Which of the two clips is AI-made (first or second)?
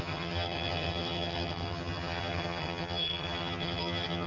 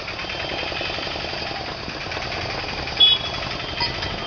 first